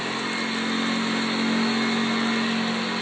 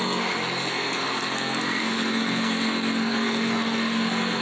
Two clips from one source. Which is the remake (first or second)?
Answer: second